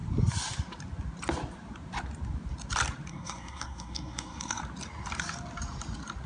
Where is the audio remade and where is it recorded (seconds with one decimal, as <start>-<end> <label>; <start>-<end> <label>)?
0.0-3.1 recorded; 3.1-4.6 remade; 4.6-6.3 recorded